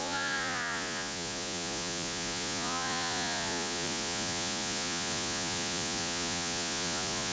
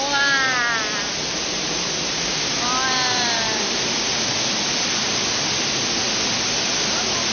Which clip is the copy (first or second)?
first